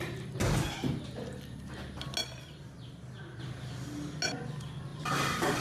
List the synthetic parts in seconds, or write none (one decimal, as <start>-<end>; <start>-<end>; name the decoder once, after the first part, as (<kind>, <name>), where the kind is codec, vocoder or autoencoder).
2.2-3.4 (vocoder, BigVGAN v2); 4.9-5.6